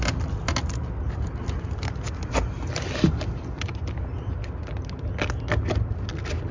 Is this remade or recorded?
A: recorded